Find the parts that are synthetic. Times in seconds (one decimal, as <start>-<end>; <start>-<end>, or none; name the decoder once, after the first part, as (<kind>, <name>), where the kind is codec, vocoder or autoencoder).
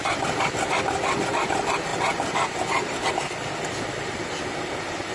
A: 0.0-1.9 (vocoder, BigVGAN v2); 3.1-5.1